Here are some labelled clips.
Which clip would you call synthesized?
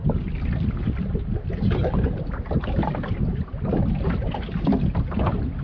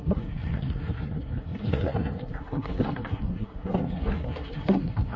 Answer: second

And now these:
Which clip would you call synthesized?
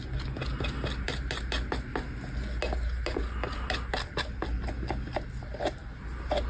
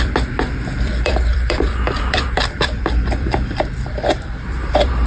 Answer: second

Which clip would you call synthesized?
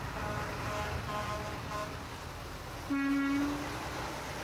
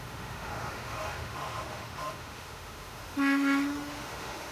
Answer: second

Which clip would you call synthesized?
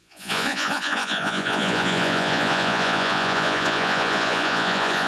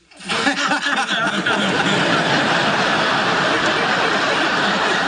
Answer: first